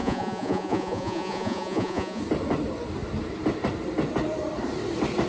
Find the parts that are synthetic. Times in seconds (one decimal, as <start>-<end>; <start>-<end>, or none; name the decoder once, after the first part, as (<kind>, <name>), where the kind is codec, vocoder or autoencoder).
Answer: 0.0-2.2 (vocoder, Vocos)